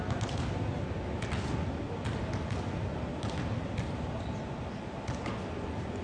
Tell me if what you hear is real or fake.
real